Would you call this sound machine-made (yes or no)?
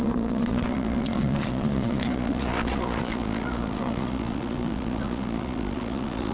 yes